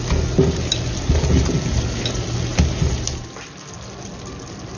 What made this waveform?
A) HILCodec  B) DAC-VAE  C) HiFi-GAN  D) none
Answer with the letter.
D